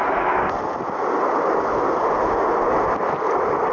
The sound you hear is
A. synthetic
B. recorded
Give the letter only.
B